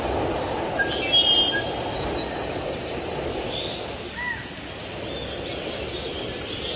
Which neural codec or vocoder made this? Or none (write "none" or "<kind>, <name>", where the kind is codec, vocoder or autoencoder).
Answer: none